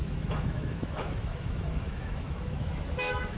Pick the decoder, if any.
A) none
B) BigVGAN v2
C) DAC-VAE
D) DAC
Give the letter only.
C